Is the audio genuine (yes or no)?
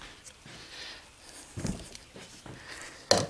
yes